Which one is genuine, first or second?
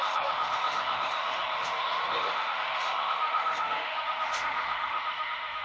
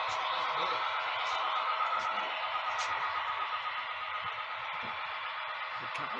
second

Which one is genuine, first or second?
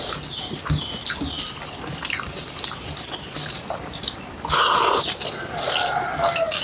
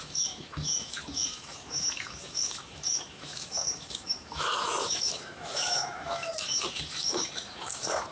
first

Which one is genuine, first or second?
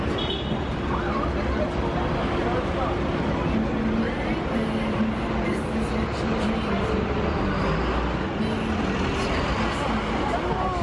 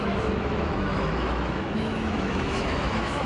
first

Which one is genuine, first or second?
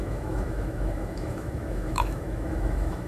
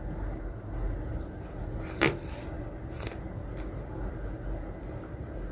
second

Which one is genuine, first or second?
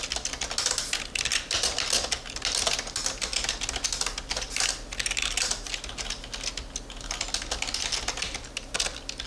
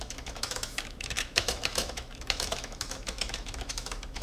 first